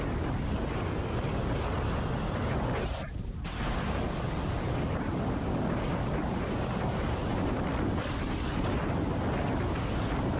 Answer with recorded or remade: recorded